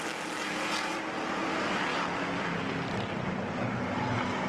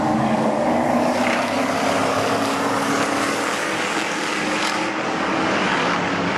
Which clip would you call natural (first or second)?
first